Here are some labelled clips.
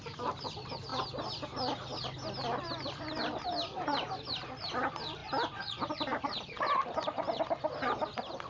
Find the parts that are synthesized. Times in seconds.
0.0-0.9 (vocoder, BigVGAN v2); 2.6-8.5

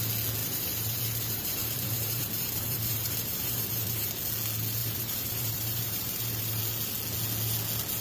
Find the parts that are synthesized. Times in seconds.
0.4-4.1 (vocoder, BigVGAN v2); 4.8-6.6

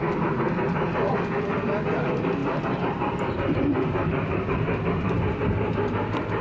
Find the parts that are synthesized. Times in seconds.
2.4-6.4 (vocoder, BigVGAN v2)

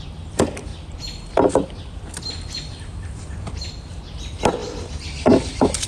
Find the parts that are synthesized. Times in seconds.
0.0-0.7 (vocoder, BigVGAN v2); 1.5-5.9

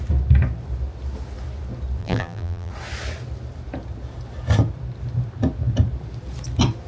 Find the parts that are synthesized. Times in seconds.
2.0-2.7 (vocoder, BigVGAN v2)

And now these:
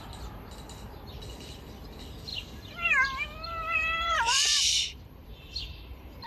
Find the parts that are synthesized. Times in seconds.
2.3-6.3 (vocoder, BigVGAN v2)

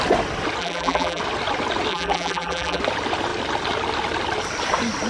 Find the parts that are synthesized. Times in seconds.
0.6-1.2 (vocoder, BigVGAN v2); 1.9-2.8

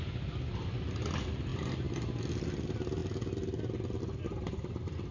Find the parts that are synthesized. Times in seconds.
none